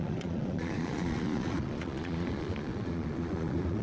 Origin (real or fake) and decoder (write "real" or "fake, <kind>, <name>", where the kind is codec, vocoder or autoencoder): fake, vocoder, Vocos